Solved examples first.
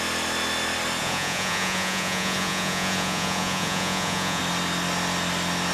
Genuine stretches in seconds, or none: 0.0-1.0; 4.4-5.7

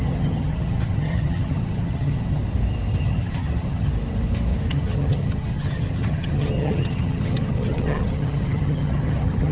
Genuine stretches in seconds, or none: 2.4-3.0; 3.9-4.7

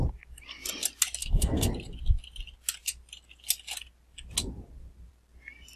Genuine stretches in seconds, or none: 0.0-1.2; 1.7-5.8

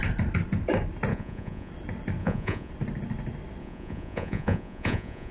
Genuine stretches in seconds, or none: 0.0-1.1; 1.7-2.2; 2.7-3.6

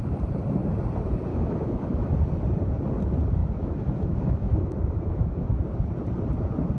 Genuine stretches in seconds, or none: 0.0-1.3; 2.1-3.4; 5.6-6.8

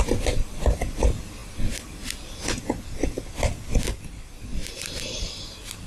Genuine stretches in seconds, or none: 0.0-5.9